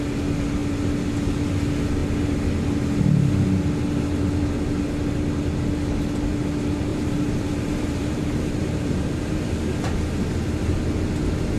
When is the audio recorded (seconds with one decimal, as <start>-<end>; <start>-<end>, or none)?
0.0-6.9; 9.5-11.6